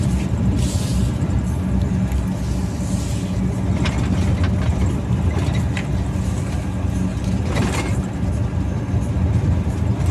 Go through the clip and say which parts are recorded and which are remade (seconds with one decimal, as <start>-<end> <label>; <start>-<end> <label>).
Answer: 0.0-10.1 recorded